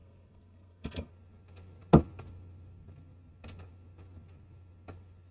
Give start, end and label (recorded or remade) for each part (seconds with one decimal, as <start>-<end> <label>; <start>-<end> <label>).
0.0-1.1 remade; 1.1-5.3 recorded